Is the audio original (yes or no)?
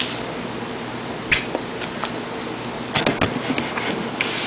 yes